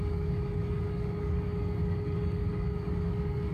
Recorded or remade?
remade